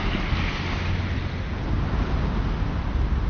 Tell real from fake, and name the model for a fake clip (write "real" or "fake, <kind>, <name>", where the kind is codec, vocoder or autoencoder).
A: real